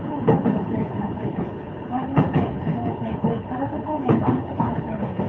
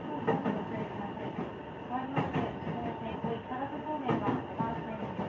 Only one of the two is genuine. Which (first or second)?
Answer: second